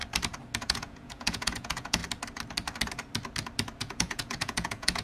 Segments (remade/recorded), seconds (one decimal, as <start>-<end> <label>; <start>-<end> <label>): 0.0-0.6 recorded; 0.6-2.0 remade; 2.0-3.8 recorded; 3.8-5.0 remade